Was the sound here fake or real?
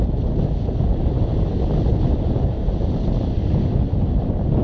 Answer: real